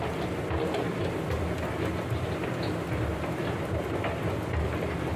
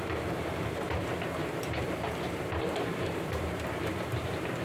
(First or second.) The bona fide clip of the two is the first